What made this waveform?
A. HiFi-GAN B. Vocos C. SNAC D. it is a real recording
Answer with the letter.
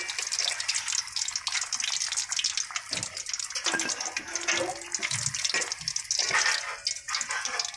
D